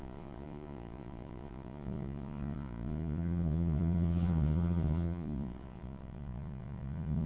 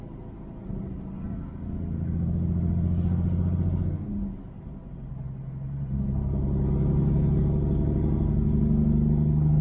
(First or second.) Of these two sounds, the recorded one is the second